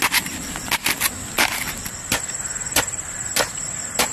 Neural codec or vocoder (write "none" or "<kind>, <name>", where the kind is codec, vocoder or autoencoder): none